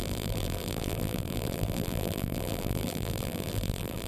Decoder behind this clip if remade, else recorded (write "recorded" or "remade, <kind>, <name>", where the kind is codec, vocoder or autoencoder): remade, vocoder, BigVGAN v2